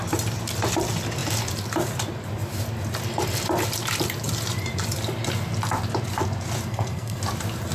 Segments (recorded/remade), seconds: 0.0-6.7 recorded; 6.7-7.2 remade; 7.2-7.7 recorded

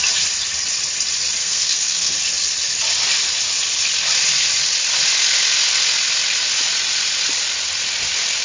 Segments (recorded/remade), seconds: 0.0-1.4 recorded; 1.4-2.1 remade; 2.1-8.4 recorded